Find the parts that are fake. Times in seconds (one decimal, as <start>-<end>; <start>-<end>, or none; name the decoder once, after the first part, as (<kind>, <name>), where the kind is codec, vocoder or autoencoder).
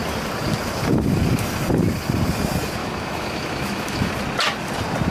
2.8-4.1 (autoencoder, DAC-VAE)